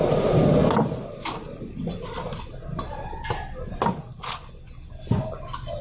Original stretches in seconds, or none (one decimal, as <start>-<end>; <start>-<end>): 0.0-5.8